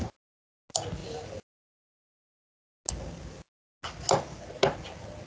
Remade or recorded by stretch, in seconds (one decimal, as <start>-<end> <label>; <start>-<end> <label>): 0.0-5.3 recorded